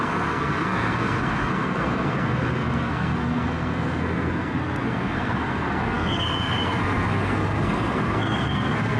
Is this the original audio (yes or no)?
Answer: no